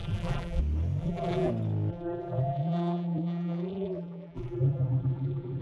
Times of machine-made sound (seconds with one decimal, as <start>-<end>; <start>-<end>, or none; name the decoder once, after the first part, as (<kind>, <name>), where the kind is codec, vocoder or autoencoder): 0.0-0.6 (vocoder, BigVGAN v2); 1.0-1.5; 1.9-5.6